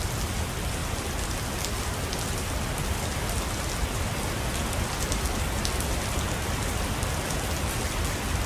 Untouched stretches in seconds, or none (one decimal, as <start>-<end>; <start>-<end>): 0.0-8.5